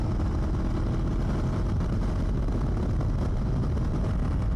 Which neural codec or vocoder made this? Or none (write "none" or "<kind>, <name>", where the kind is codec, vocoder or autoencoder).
none